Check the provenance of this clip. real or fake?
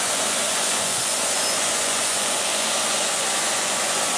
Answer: fake